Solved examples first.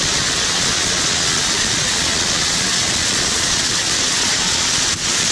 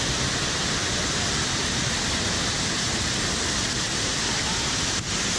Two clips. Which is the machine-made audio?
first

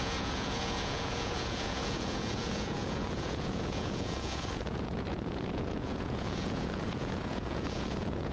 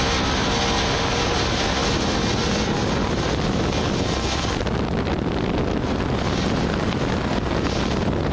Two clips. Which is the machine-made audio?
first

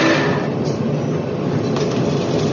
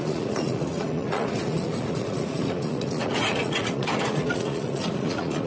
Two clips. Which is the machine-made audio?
second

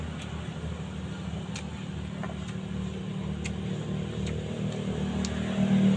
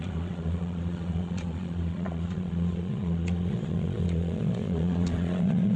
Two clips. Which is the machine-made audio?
second